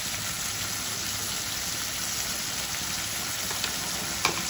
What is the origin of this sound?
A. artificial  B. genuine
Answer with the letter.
B